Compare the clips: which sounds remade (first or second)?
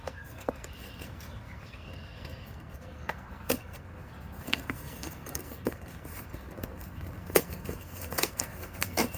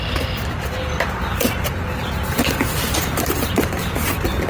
first